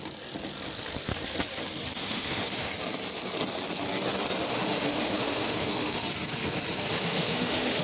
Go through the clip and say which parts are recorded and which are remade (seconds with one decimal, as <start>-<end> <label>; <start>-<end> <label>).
0.0-2.0 recorded; 2.0-2.7 remade; 2.7-4.5 recorded; 4.5-6.0 remade; 6.0-6.9 recorded; 6.9-7.8 remade